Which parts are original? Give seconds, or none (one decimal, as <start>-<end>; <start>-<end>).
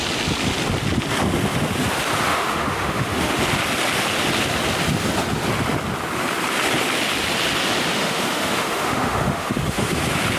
0.0-2.3; 3.4-7.9; 10.0-10.4